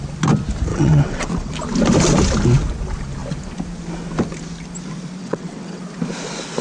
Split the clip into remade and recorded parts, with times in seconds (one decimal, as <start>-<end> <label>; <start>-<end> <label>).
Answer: 0.0-0.7 recorded; 0.7-1.5 remade; 1.5-5.2 recorded; 5.2-5.8 remade; 5.8-6.6 recorded